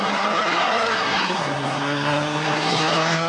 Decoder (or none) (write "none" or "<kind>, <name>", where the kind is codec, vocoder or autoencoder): codec, SNAC